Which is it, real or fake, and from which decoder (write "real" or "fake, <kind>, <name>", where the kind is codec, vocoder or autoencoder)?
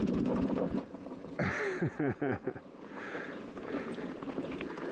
fake, vocoder, Vocos